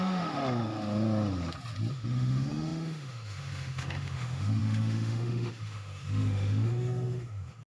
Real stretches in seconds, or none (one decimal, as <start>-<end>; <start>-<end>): 0.4-1.9